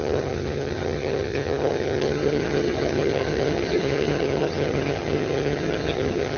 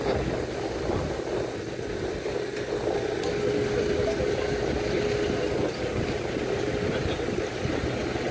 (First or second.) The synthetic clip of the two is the first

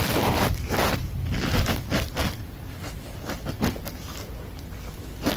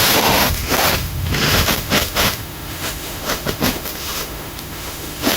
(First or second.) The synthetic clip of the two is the second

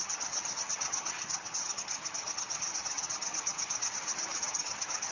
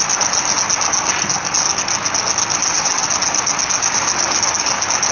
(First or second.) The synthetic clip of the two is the first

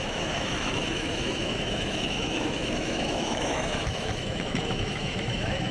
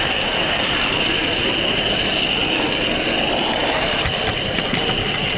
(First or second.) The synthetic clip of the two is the first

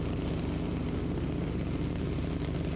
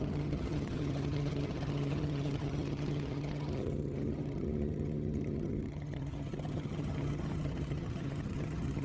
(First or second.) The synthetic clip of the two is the second